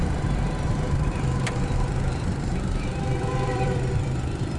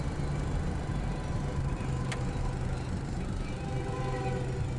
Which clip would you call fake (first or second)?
first